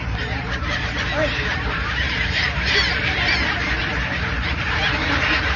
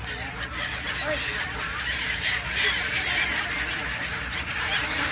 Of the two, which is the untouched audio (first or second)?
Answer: second